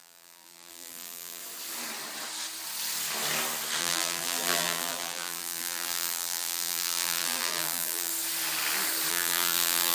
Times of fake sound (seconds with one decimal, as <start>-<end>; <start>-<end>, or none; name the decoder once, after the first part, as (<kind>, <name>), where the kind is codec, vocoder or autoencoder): 0.0-1.4 (vocoder, BigVGAN v2); 3.8-8.1; 9.1-9.9